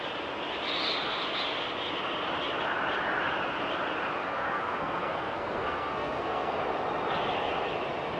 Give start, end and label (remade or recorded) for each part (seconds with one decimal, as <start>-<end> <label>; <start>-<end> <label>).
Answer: 0.0-4.2 recorded; 4.2-6.6 remade; 6.6-8.2 recorded